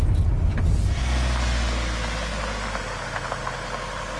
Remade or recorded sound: recorded